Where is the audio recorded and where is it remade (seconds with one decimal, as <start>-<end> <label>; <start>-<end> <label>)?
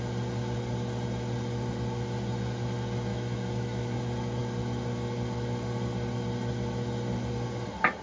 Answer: 0.0-3.1 recorded; 3.1-4.0 remade; 4.0-8.0 recorded